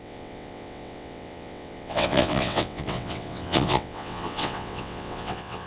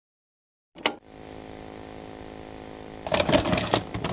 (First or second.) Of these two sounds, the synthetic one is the first